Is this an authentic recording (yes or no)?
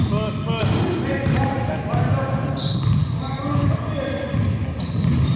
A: yes